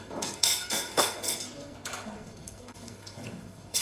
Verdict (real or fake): fake